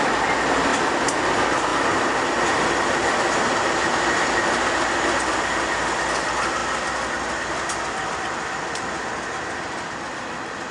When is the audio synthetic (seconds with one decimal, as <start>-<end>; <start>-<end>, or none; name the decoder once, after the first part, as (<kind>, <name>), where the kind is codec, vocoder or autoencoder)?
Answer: none